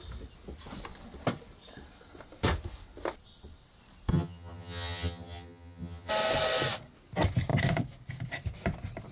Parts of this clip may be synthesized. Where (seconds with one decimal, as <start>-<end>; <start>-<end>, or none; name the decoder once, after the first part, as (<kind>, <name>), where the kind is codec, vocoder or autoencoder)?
4.1-6.1 (vocoder, HiFi-GAN)